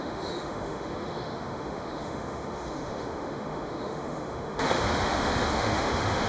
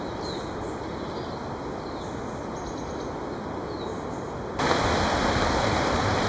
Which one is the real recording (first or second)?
second